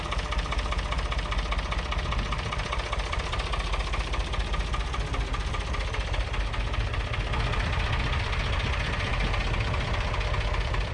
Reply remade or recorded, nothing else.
recorded